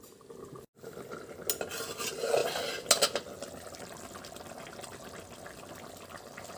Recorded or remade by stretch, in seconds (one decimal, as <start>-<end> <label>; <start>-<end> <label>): 0.0-6.6 recorded

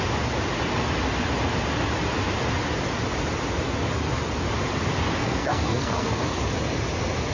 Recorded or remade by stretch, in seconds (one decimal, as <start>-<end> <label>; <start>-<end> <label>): 0.0-5.2 recorded; 5.2-6.2 remade; 6.2-7.3 recorded

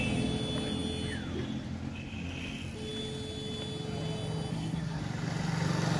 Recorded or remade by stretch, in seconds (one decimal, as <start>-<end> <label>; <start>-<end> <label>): 0.0-4.5 recorded; 4.5-5.0 remade; 5.0-6.0 recorded

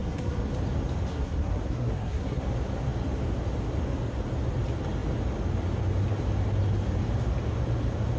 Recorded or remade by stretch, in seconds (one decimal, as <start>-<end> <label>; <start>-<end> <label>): 0.0-0.5 remade; 0.5-1.1 recorded; 1.1-2.4 remade; 2.4-8.2 recorded

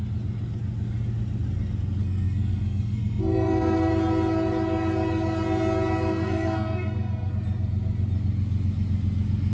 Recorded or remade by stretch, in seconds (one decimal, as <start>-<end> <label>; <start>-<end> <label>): 0.0-2.0 recorded; 2.0-3.9 remade; 3.9-6.1 recorded; 6.1-7.3 remade; 7.3-9.5 recorded

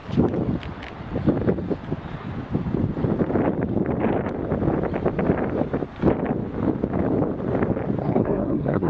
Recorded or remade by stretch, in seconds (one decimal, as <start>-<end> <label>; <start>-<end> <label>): 0.0-8.0 recorded; 8.0-8.9 remade

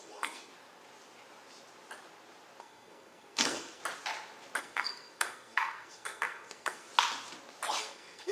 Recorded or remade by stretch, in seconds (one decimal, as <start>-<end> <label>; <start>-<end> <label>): 0.0-0.5 remade; 0.5-2.6 recorded; 2.6-3.8 remade; 3.8-4.6 recorded; 4.6-6.9 remade; 6.9-7.8 recorded; 7.8-8.3 remade

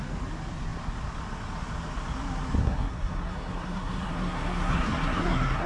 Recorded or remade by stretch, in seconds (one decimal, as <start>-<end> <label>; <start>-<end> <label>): 0.0-2.6 recorded; 2.6-5.7 remade